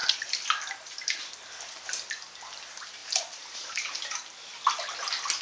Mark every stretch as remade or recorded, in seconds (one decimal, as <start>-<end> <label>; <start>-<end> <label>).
0.0-5.4 recorded